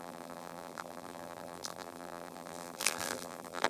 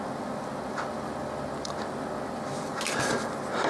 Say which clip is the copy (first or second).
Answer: first